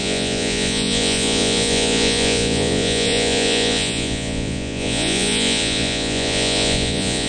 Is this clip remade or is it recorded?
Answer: remade